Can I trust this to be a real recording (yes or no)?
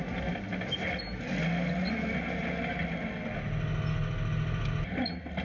yes